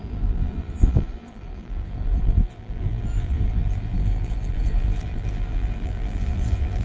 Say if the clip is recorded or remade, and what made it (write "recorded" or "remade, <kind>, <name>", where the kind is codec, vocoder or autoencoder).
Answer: remade, vocoder, BigVGAN v2